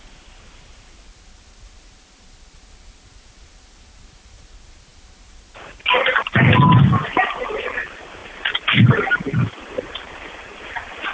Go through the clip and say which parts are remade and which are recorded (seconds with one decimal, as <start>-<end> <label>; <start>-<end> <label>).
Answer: 0.0-11.1 recorded